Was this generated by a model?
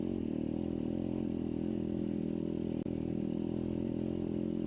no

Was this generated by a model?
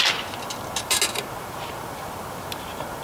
no